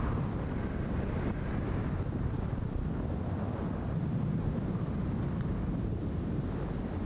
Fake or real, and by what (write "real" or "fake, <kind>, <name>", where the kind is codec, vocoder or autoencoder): real